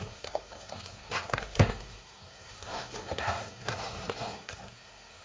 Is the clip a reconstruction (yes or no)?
yes